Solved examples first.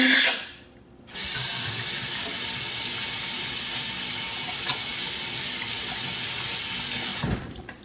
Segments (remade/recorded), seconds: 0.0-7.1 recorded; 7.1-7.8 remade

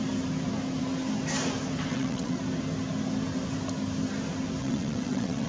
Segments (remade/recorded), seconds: 0.0-1.9 recorded; 1.9-2.4 remade; 2.4-4.6 recorded; 4.6-5.5 remade

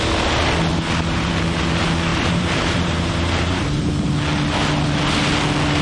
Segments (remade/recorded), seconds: 0.0-0.7 recorded; 0.7-1.3 remade; 1.3-2.1 recorded; 2.1-3.9 remade; 3.9-5.8 recorded

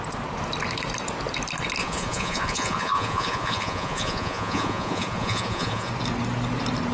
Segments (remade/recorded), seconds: 0.0-1.8 recorded; 1.8-5.9 remade; 5.9-6.9 recorded

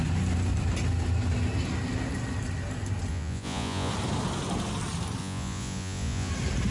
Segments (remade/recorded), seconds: 0.0-3.1 recorded; 3.1-3.9 remade; 3.9-5.2 recorded; 5.2-6.3 remade; 6.3-6.7 recorded

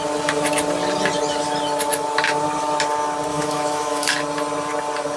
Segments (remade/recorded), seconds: 0.0-3.3 recorded; 3.3-4.1 remade; 4.1-5.2 recorded

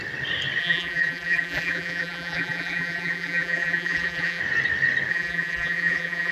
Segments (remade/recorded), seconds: 0.0-0.6 recorded; 0.6-4.4 remade; 4.4-5.1 recorded; 5.1-6.3 remade